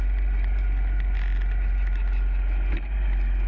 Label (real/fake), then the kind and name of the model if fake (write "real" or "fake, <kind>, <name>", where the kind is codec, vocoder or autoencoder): real